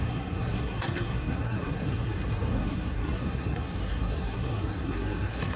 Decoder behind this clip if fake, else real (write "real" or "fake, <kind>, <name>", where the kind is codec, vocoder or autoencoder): fake, codec, SNAC